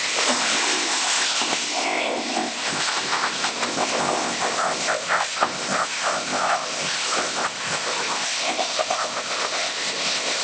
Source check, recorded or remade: remade